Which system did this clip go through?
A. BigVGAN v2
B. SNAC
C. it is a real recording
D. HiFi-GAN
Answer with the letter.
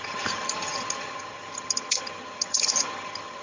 D